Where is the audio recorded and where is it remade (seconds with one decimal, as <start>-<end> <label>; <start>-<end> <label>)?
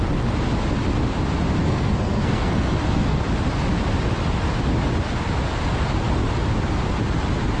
0.0-1.6 recorded; 1.6-3.2 remade; 3.2-7.6 recorded